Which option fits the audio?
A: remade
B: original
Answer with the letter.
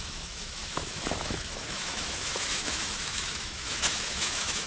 A